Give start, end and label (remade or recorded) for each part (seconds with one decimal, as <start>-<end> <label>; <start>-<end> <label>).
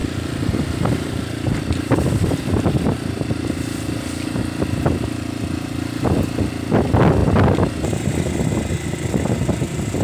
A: 0.0-3.2 remade; 3.2-7.2 recorded; 7.2-8.0 remade; 8.0-10.0 recorded